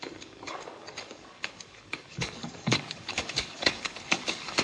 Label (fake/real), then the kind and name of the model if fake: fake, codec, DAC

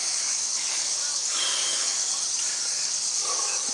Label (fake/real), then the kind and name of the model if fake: fake, codec, DAC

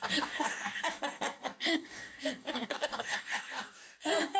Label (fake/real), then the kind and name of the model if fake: fake, codec, DAC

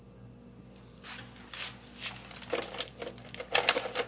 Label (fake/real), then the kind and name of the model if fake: real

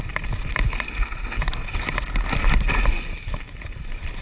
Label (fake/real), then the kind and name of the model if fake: real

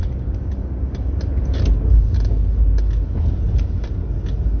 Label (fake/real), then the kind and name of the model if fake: real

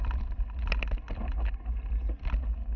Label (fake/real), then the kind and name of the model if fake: real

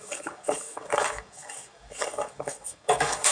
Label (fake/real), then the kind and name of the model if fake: fake, codec, DAC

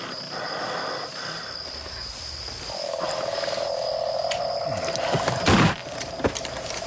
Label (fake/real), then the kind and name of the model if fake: real